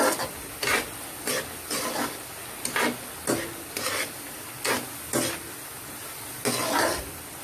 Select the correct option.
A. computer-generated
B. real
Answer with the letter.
B